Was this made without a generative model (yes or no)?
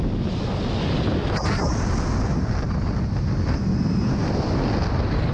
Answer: yes